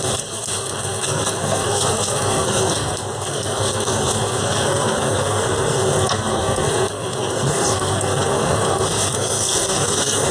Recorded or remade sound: remade